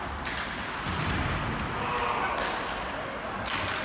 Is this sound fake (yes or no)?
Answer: no